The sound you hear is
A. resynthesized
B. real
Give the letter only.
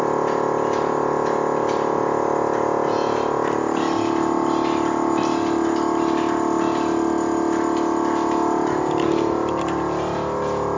B